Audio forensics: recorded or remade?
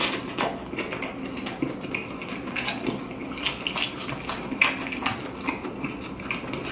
recorded